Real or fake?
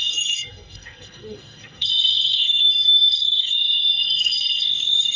fake